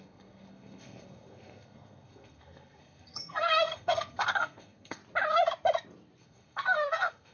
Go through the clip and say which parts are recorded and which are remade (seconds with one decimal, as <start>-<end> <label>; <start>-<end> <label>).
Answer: 0.0-5.0 remade; 5.0-6.2 recorded; 6.2-7.3 remade